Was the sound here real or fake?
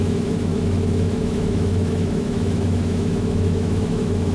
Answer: fake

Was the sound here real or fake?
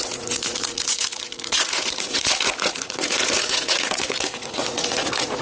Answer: fake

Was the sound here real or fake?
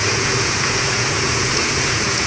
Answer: fake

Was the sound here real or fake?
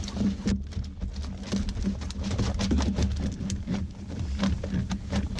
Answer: real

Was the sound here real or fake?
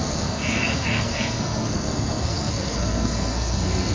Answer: fake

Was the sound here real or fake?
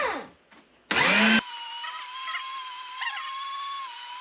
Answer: real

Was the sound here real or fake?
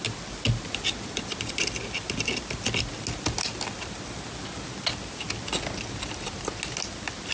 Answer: real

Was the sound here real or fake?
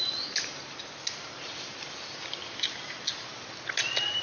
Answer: real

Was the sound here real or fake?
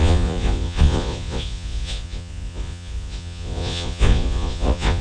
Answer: fake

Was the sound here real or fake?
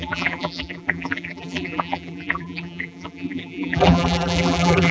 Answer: fake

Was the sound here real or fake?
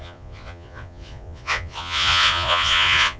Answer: fake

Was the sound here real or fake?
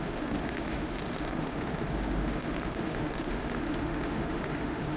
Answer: fake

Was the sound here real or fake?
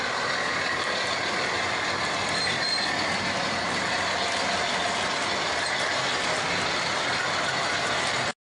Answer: real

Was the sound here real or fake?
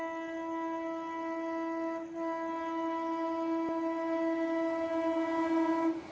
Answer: real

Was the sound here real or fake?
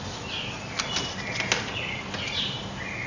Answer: real